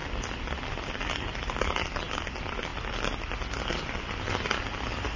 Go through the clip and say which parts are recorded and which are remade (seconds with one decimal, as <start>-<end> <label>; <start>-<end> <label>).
0.0-5.2 recorded